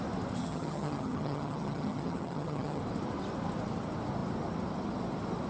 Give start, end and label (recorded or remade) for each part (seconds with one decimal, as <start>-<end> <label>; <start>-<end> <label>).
0.0-0.4 recorded; 0.4-2.8 remade; 2.8-5.5 recorded